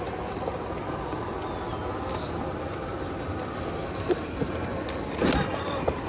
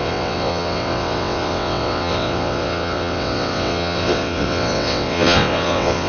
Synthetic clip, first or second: second